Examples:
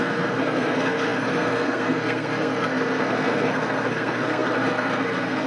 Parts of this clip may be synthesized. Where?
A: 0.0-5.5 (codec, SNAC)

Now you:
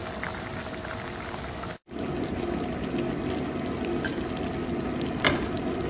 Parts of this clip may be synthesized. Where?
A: none

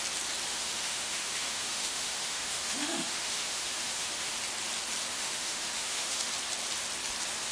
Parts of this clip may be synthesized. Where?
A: 0.5-4.3 (autoencoder, DAC-VAE); 5.1-6.3

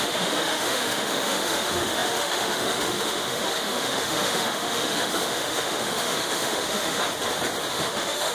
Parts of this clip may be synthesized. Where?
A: 0.0-7.0 (autoencoder, DAC-VAE); 7.7-8.3

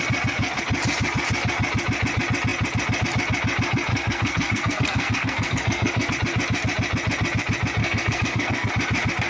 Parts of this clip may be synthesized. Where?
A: 3.9-6.1 (codec, SNAC); 7.8-8.7

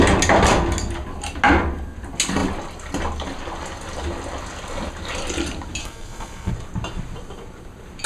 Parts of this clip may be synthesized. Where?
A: 5.8-6.5 (codec, SNAC)

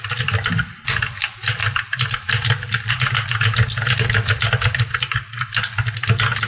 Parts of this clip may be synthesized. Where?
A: none